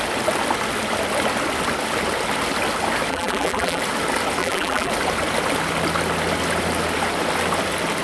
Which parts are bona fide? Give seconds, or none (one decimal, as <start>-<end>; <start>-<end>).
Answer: 0.0-3.1; 3.8-4.4; 4.9-8.0